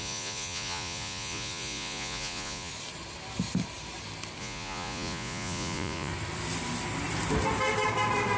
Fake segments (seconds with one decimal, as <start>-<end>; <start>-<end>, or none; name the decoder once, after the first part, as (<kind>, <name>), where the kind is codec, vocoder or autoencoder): 0.0-2.7 (vocoder, Vocos); 4.4-6.1